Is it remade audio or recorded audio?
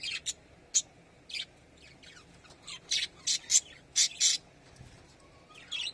recorded